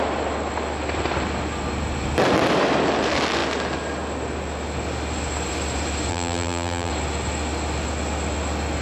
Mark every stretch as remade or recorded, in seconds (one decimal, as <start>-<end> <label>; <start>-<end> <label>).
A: 0.0-6.1 recorded; 6.1-6.9 remade; 6.9-8.8 recorded